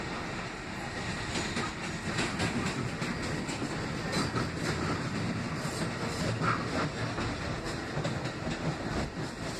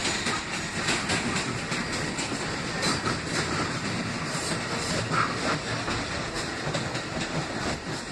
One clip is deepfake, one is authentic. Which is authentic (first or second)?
first